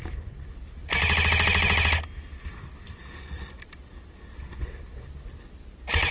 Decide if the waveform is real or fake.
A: real